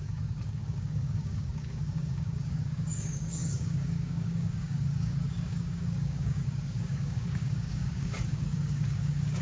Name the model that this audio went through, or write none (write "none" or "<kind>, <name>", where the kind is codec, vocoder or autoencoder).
codec, DAC